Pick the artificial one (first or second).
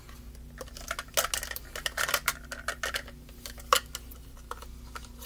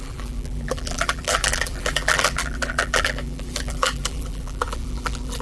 second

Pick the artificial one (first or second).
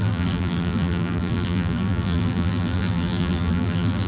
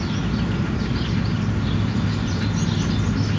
first